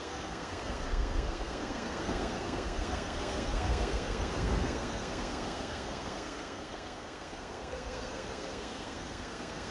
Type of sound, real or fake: fake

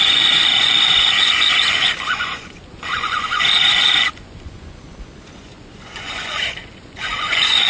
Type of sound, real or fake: fake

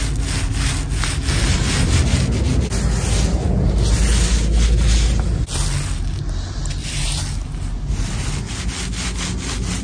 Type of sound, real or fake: real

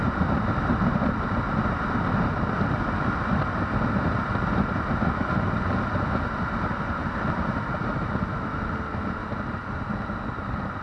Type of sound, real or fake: real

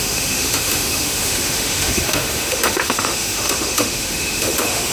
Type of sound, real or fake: fake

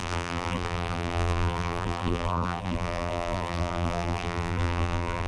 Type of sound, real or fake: fake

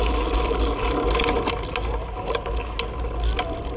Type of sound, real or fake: real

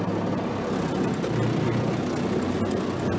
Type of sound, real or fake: real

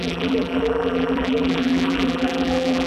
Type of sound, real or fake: fake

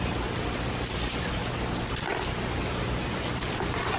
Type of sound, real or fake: real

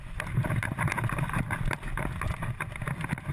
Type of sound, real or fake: real